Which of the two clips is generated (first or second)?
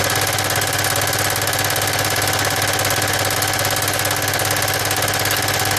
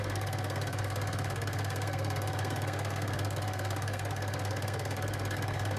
second